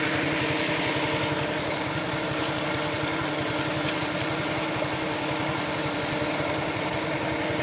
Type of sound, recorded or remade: recorded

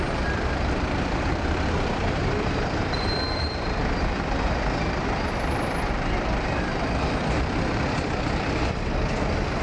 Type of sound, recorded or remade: remade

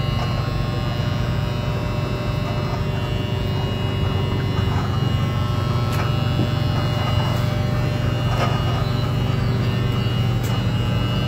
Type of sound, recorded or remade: recorded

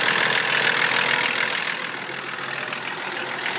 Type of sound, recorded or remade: recorded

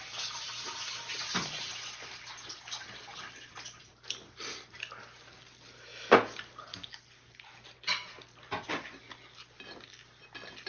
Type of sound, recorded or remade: recorded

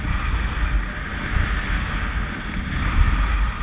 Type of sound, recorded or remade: recorded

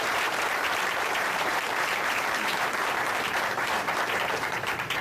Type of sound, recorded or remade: remade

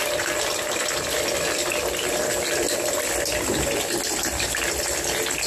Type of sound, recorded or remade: recorded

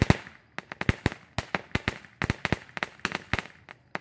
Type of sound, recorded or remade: recorded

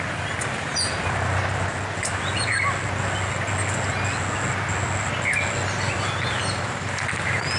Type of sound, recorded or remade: recorded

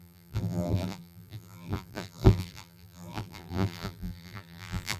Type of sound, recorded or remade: remade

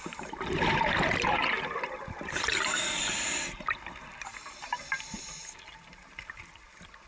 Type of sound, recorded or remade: recorded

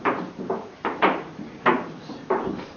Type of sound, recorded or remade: remade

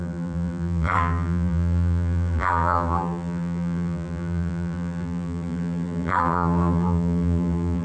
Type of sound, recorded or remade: remade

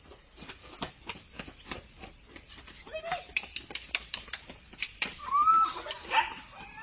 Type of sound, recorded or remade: remade